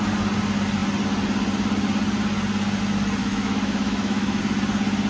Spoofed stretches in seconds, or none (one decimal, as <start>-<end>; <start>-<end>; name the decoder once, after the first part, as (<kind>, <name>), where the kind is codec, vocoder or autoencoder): 3.2-4.4 (autoencoder, DAC-VAE)